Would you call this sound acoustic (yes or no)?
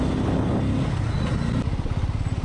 yes